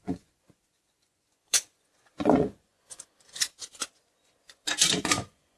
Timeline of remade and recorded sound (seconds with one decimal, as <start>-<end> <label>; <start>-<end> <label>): 0.0-5.6 remade